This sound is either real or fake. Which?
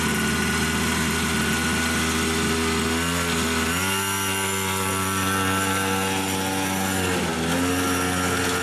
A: real